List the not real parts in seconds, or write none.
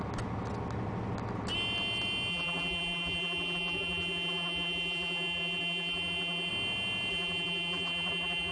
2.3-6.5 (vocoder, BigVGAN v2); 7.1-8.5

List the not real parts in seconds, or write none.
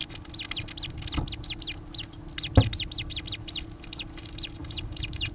4.6-5.3 (vocoder, BigVGAN v2)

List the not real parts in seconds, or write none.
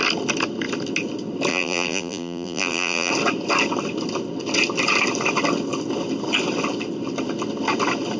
1.5-3.1 (vocoder, BigVGAN v2)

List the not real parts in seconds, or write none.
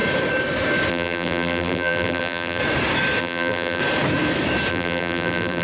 0.9-2.6 (vocoder, BigVGAN v2); 3.2-3.8; 4.7-5.6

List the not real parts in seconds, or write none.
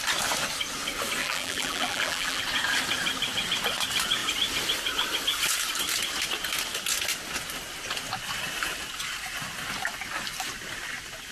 1.2-2.4 (vocoder, BigVGAN v2)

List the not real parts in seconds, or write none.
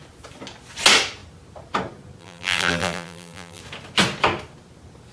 2.2-3.6 (vocoder, BigVGAN v2)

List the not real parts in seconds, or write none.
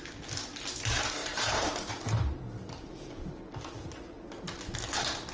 1.2-3.1 (vocoder, BigVGAN v2)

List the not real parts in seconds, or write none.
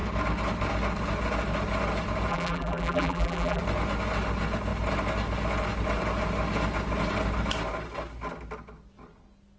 2.3-3.6 (vocoder, BigVGAN v2)